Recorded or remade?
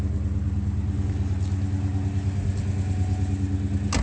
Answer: recorded